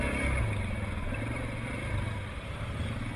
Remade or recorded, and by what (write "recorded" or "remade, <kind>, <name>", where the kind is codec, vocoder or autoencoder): recorded